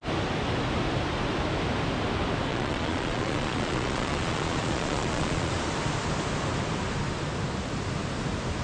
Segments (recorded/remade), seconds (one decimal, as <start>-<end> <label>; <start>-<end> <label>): 0.0-2.5 recorded; 2.5-5.5 remade; 5.5-8.6 recorded